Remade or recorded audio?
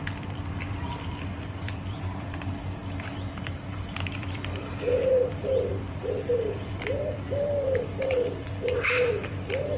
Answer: remade